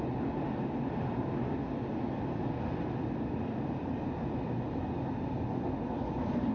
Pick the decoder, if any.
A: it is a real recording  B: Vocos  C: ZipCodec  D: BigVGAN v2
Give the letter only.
A